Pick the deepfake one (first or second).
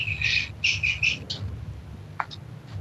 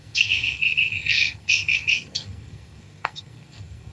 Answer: second